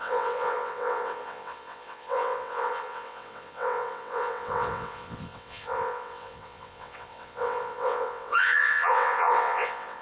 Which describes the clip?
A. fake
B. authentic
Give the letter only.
A